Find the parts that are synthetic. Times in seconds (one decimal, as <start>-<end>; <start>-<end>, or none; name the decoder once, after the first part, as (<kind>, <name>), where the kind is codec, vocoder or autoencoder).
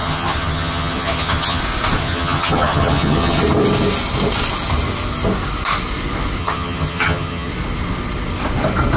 0.0-1.6 (vocoder, HiFi-GAN); 2.0-3.4; 6.4-7.5